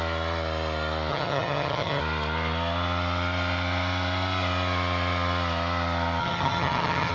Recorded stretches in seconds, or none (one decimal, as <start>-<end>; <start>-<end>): 0.0-1.1; 2.0-6.2